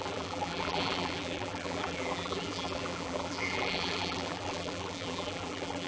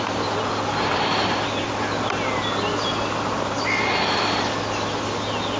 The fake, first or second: first